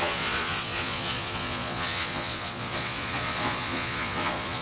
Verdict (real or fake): fake